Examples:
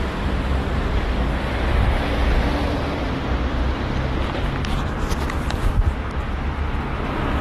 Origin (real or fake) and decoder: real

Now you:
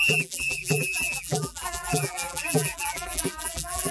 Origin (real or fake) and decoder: fake, vocoder, BigVGAN v2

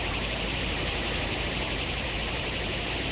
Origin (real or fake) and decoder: fake, vocoder, BigVGAN v2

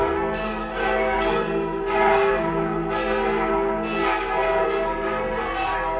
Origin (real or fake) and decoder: fake, codec, SNAC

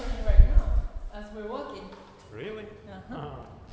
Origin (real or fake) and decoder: real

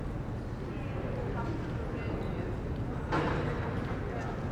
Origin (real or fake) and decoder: real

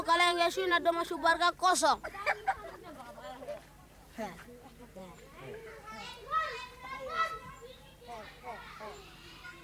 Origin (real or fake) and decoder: fake, vocoder, BigVGAN v2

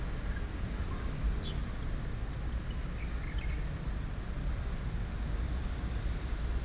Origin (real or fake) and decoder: real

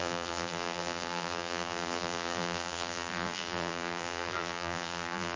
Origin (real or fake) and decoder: fake, vocoder, BigVGAN v2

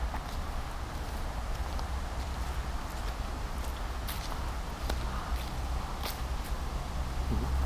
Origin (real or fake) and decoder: real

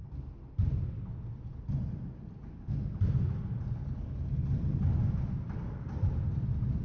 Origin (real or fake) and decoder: real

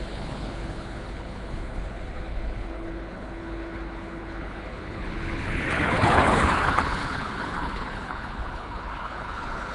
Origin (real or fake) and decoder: fake, codec, HILCodec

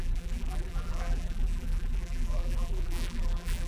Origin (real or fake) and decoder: fake, vocoder, BigVGAN v2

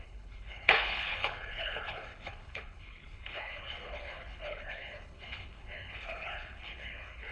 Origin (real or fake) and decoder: fake, codec, HILCodec